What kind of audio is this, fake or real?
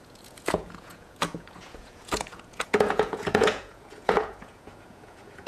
fake